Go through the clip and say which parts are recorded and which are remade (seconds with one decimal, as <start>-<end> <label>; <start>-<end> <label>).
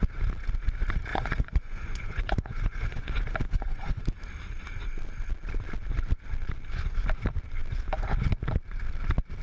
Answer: 0.0-1.1 recorded; 1.1-4.0 remade; 4.0-9.4 recorded